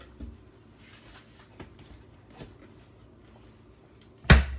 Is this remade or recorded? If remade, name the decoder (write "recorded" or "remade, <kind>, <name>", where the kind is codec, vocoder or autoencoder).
recorded